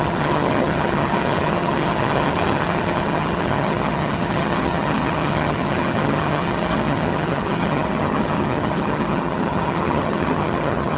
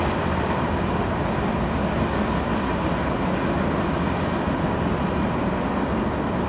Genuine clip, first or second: second